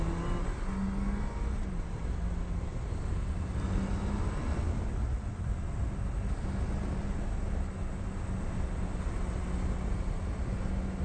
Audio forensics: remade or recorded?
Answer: recorded